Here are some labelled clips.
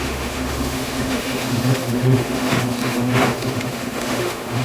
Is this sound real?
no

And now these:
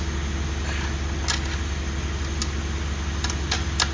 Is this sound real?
yes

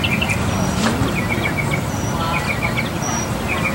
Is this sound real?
yes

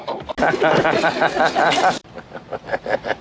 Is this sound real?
yes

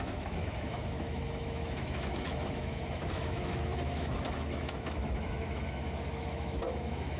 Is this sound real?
no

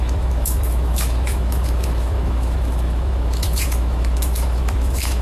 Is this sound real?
no